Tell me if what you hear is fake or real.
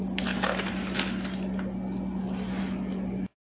real